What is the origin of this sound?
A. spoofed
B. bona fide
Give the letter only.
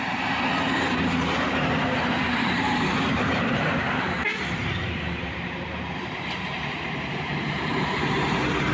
A